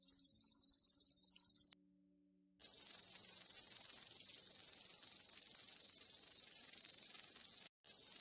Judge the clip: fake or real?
real